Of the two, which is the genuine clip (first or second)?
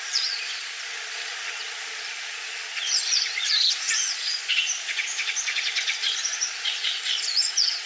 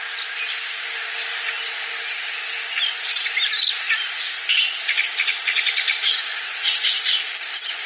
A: second